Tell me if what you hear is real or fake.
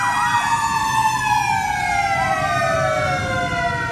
real